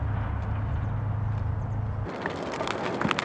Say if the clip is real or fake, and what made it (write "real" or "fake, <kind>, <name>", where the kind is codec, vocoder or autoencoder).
real